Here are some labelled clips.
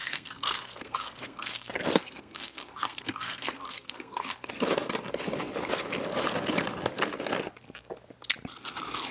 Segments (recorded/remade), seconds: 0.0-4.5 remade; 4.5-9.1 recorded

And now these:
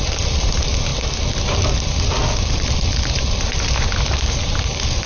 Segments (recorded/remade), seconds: 0.0-5.1 recorded

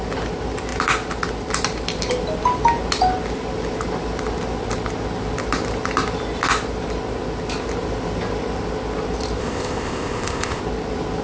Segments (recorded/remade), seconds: 0.0-9.4 recorded; 9.4-10.6 remade; 10.6-11.2 recorded

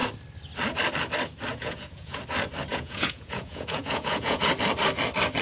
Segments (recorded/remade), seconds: 0.0-1.5 recorded; 1.5-2.2 remade; 2.2-2.7 recorded; 2.7-4.4 remade; 4.4-5.4 recorded

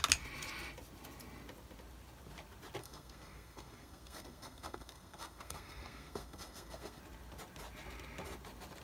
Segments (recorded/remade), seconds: 0.0-2.8 recorded; 2.8-7.0 remade; 7.0-8.8 recorded

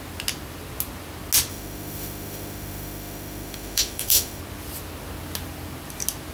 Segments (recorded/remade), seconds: 0.0-1.5 recorded; 1.5-4.4 remade; 4.4-6.3 recorded

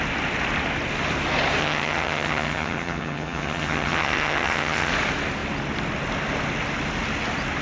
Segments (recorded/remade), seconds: 0.0-1.6 recorded; 1.6-4.9 remade; 4.9-7.6 recorded